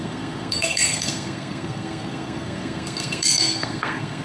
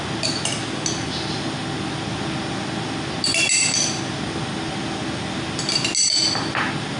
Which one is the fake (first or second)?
first